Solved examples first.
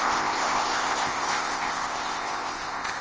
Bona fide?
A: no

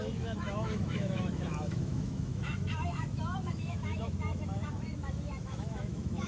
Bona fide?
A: no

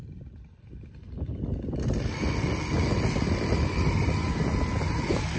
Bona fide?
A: yes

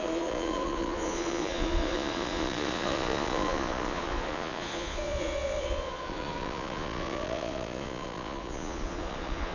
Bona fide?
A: no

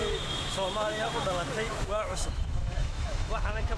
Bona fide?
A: no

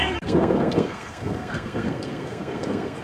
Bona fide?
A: no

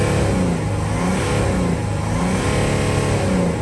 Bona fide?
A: yes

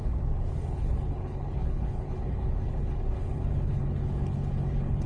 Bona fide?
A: no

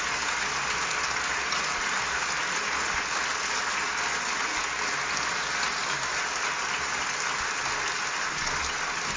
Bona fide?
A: yes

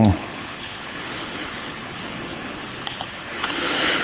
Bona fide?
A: no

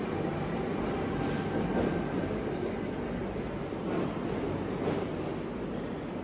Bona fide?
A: yes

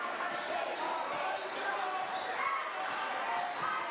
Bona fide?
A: yes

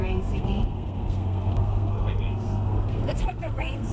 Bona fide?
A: no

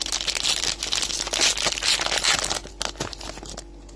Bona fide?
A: yes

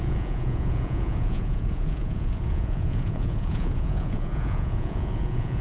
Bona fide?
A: no